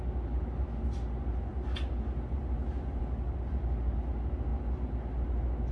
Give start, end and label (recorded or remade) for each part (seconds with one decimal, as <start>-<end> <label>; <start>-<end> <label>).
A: 0.0-5.7 recorded